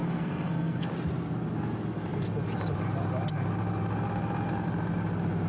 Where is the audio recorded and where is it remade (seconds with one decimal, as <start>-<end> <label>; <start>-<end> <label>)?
0.0-0.9 remade; 0.9-5.5 recorded